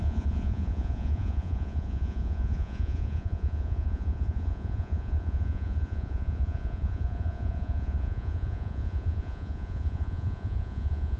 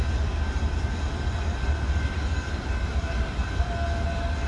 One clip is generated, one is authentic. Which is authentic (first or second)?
second